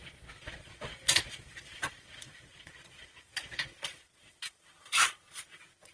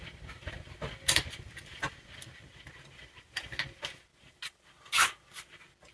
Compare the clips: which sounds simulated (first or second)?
first